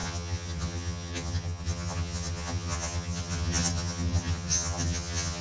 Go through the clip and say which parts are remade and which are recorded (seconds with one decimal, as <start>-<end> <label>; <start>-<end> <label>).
0.0-5.4 remade